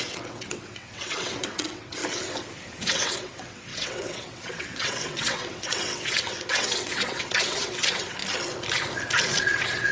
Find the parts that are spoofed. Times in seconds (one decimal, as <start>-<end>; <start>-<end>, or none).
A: 0.0-2.0; 2.8-8.2; 9.4-9.9